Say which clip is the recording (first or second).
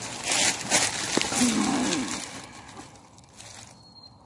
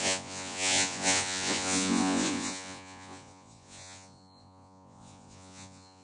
first